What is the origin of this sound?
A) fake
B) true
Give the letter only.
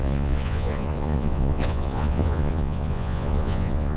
A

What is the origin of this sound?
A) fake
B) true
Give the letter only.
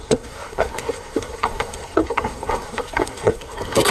A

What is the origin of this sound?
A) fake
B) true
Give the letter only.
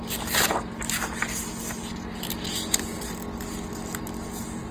B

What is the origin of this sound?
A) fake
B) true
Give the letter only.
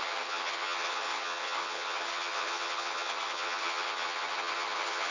A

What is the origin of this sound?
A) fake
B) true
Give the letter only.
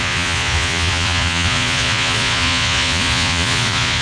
A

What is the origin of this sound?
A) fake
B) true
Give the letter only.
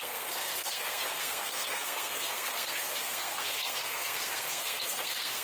A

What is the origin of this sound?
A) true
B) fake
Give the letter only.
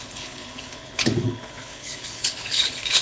B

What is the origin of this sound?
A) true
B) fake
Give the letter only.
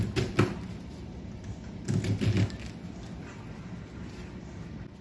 A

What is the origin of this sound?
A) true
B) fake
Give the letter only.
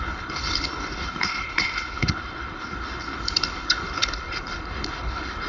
B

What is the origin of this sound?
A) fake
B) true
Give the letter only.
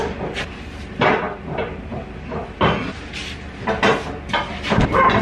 B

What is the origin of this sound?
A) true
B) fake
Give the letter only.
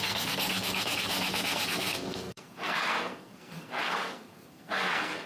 B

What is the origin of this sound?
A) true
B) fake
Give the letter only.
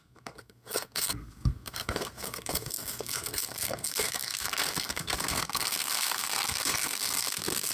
B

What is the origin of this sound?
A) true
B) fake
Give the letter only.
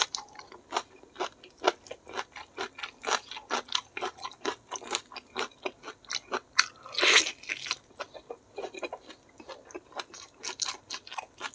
A